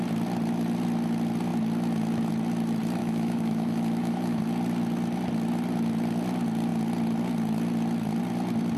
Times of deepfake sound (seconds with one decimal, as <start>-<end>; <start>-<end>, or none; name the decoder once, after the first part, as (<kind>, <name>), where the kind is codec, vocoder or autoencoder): 3.0-4.4 (autoencoder, DAC-VAE)

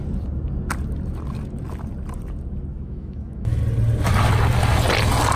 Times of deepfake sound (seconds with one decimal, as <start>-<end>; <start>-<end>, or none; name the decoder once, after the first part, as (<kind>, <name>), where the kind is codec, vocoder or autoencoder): 2.7-3.6 (autoencoder, DAC-VAE)

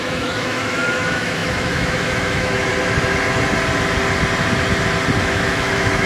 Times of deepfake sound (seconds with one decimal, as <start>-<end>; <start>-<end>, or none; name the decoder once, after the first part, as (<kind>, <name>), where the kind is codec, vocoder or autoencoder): 0.0-2.7 (autoencoder, DAC-VAE); 5.2-6.1

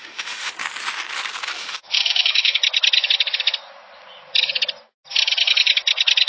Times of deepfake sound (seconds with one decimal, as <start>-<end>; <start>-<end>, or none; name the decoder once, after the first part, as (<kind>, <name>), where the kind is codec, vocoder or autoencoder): 0.0-0.5 (autoencoder, DAC-VAE); 1.6-2.6

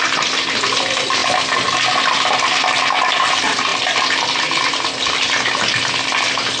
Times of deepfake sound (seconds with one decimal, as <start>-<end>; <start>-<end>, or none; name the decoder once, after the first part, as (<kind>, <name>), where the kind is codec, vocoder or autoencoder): none

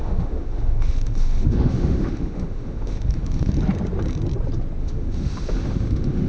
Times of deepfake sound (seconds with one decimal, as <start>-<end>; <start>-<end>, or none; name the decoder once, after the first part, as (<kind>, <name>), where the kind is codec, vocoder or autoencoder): 0.0-3.5 (autoencoder, DAC-VAE); 4.8-6.3

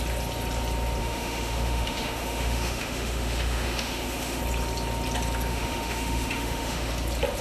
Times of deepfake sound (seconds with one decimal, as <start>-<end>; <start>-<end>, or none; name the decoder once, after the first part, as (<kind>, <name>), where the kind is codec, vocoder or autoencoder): 1.0-4.4 (autoencoder, DAC-VAE); 5.5-6.9